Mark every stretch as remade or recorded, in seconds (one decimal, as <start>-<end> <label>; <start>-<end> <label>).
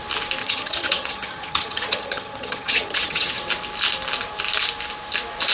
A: 0.0-0.4 recorded; 0.4-3.4 remade; 3.4-5.5 recorded